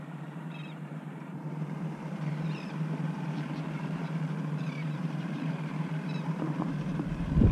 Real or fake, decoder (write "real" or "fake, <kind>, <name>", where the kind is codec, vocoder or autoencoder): fake, vocoder, BigVGAN v2